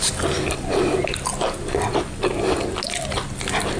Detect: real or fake real